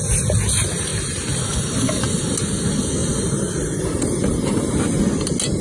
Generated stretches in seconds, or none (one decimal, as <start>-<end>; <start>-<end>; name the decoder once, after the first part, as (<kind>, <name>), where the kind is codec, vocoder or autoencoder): 0.9-1.5 (vocoder, BigVGAN v2); 3.0-4.8